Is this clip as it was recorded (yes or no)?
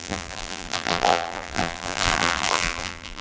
no